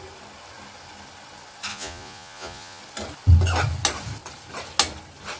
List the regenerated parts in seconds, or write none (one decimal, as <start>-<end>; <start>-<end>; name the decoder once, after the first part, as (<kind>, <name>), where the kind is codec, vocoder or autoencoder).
1.7-2.8 (vocoder, Vocos)